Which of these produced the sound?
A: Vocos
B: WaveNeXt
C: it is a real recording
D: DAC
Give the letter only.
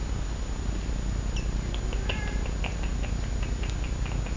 C